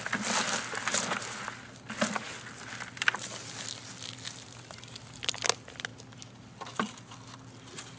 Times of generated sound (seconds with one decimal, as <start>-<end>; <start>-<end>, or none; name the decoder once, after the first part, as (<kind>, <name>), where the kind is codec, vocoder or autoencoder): none